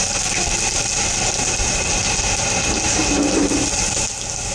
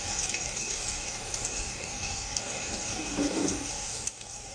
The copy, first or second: second